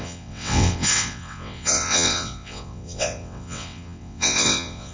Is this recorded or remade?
remade